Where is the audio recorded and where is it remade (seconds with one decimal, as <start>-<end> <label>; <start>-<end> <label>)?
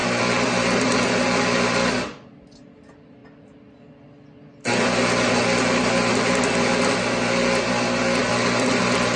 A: 0.0-9.2 recorded